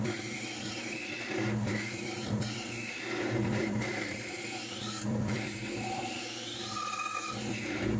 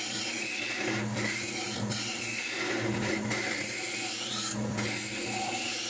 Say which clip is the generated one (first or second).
first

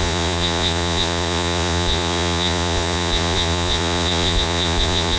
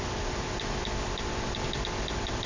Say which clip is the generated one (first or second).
first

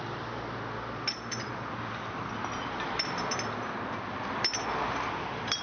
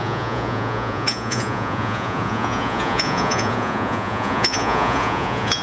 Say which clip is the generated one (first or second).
second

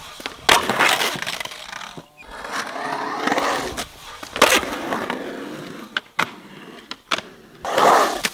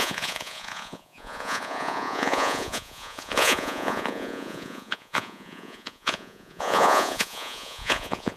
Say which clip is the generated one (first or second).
second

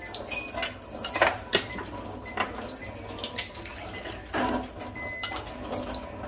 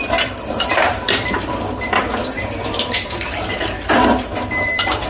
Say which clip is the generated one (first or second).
second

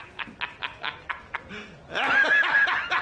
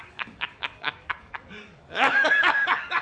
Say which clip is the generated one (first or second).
second